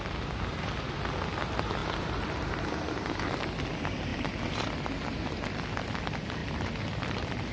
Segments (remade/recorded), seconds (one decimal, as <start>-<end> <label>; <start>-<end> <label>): 0.0-1.8 recorded; 1.8-3.1 remade; 3.1-4.1 recorded; 4.1-4.7 remade; 4.7-6.4 recorded; 6.4-7.5 remade